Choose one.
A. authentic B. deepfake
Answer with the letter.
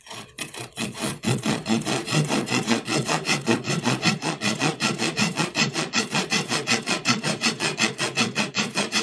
B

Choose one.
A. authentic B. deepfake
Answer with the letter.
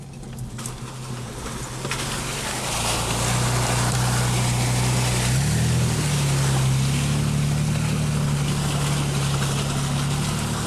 A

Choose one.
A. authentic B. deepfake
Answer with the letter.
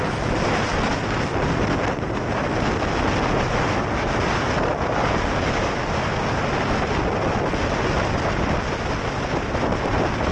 A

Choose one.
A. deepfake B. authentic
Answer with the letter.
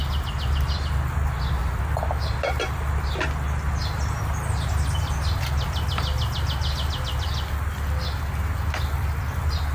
B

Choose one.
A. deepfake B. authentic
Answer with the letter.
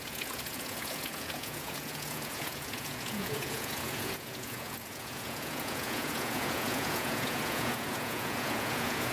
A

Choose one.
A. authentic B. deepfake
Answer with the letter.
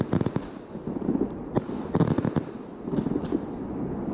A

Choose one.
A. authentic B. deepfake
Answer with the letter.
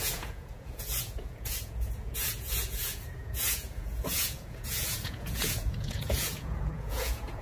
B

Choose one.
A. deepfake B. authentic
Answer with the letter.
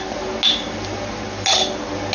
B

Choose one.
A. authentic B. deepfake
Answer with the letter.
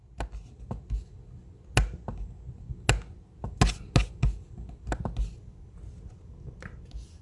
A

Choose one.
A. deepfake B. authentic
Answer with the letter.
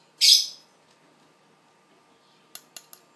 B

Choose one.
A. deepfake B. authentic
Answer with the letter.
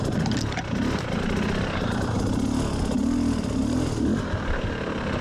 B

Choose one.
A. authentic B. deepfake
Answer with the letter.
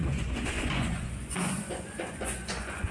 B